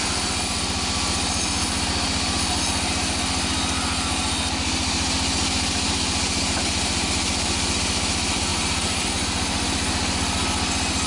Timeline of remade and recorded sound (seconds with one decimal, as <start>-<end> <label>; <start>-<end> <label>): 0.0-8.5 recorded; 8.5-9.1 remade; 9.1-11.1 recorded